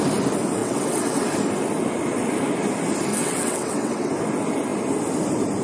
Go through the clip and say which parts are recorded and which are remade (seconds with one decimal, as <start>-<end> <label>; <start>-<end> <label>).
0.0-0.6 recorded; 0.6-1.2 remade; 1.2-3.1 recorded; 3.1-4.1 remade; 4.1-5.6 recorded